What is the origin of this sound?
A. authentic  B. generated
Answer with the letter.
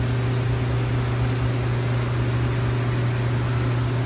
A